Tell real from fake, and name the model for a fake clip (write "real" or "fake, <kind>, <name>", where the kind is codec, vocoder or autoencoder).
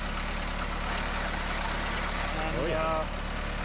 real